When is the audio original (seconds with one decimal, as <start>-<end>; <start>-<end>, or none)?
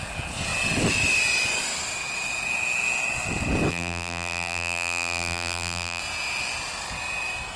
0.0-3.7; 6.0-7.6